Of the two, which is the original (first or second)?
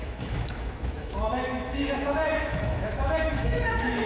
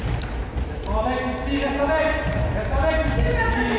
second